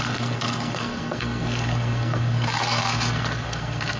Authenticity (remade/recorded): remade